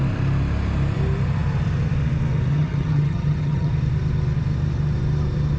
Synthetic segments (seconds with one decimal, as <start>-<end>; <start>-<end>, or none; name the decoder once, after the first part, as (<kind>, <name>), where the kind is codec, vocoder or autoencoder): 2.5-3.7 (vocoder, HiFi-GAN)